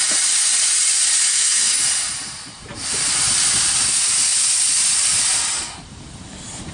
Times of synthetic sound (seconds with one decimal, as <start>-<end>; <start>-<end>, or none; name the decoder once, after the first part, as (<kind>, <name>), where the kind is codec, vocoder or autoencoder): 1.3-1.8 (autoencoder, DAC-VAE)